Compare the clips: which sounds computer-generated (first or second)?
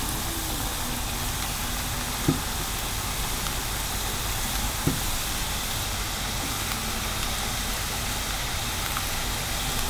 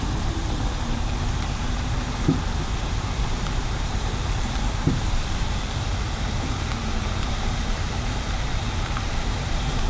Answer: second